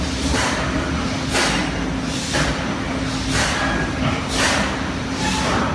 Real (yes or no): yes